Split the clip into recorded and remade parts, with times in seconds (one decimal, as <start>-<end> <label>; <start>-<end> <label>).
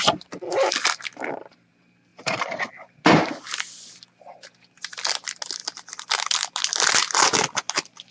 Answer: 0.0-1.1 recorded; 1.1-1.7 remade; 1.7-2.1 recorded; 2.1-2.7 remade; 2.7-8.1 recorded